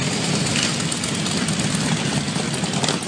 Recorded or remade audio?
recorded